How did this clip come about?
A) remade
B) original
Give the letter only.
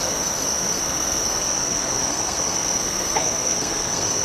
A